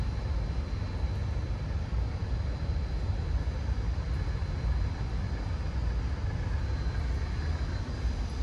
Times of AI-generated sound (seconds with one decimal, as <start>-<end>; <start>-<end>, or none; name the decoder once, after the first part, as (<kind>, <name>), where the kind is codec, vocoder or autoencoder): none